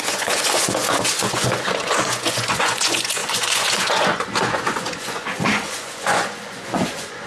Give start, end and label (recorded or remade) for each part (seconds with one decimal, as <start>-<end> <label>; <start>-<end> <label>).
0.0-7.3 remade

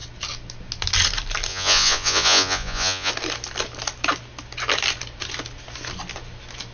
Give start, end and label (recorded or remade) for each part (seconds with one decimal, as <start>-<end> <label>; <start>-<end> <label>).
0.0-1.5 recorded; 1.5-3.1 remade; 3.1-6.7 recorded

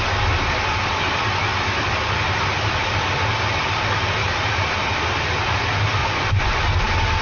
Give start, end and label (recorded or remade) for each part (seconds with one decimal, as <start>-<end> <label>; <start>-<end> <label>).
0.0-6.0 recorded; 6.0-6.6 remade; 6.6-7.2 recorded

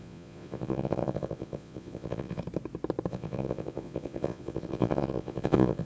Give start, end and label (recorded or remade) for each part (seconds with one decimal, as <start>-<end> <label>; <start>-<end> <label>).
0.0-2.4 remade; 2.4-3.1 recorded; 3.1-5.9 remade

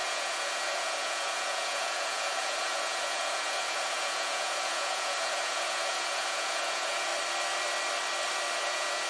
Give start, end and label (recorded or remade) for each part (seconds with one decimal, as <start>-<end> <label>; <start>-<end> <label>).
0.0-7.1 remade; 7.1-8.6 recorded; 8.6-9.1 remade

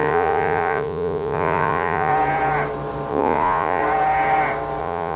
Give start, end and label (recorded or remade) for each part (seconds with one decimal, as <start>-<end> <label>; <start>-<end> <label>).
0.0-2.1 remade; 2.1-3.1 recorded; 3.1-3.8 remade; 3.8-4.8 recorded; 4.8-5.2 remade

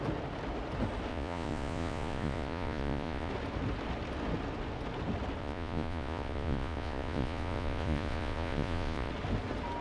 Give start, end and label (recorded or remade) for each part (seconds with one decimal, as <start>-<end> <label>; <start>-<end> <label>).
0.0-1.1 recorded; 1.1-3.3 remade; 3.3-5.4 recorded; 5.4-9.1 remade; 9.1-9.8 recorded